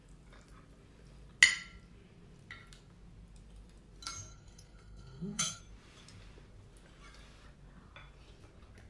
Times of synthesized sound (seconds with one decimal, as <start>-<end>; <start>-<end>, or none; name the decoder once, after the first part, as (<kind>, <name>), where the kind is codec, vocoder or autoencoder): 4.3-5.6 (codec, SNAC)